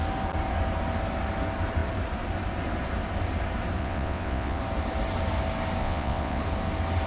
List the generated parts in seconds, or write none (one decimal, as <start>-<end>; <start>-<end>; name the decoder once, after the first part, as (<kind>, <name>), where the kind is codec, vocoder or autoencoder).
3.8-4.6 (vocoder, WaveNeXt); 5.8-6.4